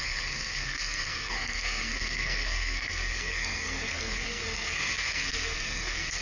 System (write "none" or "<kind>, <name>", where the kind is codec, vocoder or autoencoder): codec, SNAC